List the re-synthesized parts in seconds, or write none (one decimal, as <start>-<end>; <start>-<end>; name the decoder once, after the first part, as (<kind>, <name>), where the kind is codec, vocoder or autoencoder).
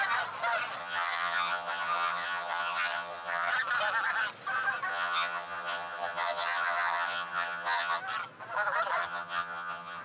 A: 0.8-3.5 (vocoder, HiFi-GAN); 4.9-8.0; 9.0-10.0